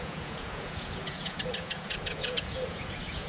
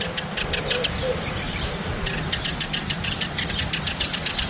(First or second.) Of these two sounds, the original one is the second